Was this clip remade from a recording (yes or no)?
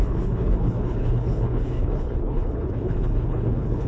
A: yes